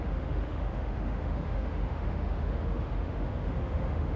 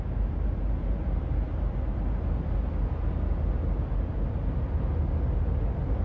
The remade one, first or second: first